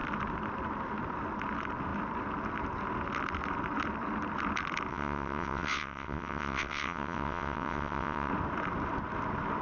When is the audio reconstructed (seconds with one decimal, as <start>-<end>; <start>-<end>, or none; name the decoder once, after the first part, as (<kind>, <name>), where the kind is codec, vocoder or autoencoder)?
4.9-8.3 (vocoder, WaveNeXt)